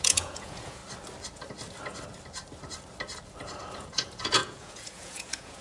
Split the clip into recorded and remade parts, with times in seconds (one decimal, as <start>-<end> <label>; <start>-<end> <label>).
0.0-0.8 remade; 0.8-3.7 recorded; 3.7-5.6 remade